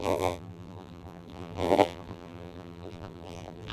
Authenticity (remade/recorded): remade